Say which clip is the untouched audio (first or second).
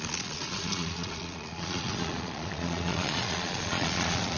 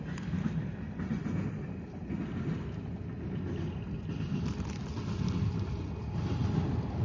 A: second